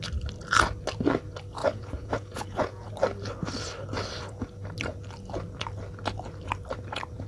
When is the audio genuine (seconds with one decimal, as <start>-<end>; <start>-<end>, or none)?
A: 0.0-1.6; 2.9-7.3